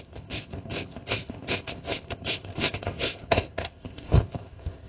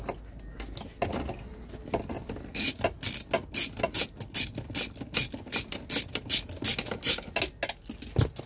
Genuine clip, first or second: second